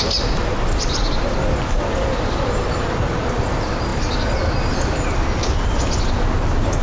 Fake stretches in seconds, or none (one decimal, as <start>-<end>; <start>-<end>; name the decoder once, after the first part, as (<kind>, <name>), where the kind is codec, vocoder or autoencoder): none